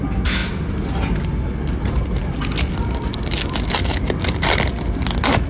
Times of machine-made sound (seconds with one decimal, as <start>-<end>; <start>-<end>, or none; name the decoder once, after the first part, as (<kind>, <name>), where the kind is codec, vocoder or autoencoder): none